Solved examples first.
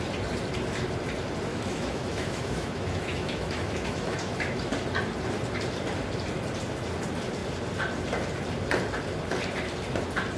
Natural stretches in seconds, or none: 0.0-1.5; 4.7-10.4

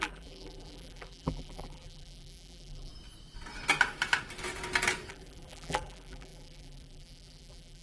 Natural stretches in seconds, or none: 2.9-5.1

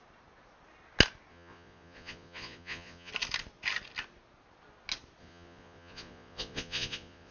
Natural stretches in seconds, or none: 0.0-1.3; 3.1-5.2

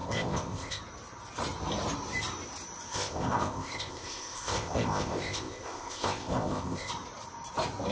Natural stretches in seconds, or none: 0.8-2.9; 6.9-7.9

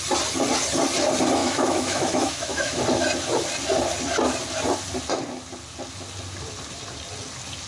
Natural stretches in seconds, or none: 0.0-1.4; 2.8-7.7

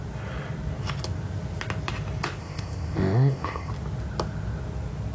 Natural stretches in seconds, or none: 0.0-2.4; 3.7-5.1

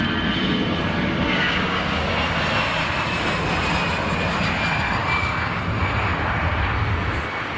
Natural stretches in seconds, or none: 0.0-1.3; 2.1-5.0; 5.6-7.6